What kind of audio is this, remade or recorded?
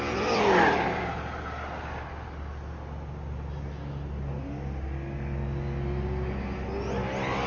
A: recorded